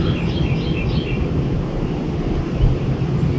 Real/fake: real